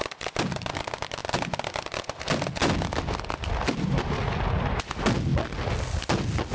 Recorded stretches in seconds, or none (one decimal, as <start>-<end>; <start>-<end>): 0.0-6.5

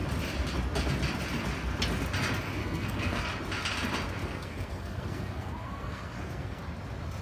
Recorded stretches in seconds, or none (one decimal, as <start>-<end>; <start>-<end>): 0.0-2.6; 3.2-4.2; 6.6-7.2